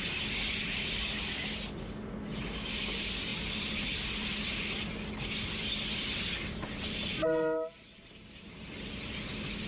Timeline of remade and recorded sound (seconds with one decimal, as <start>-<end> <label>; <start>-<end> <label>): 0.0-9.7 recorded